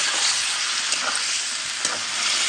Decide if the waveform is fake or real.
real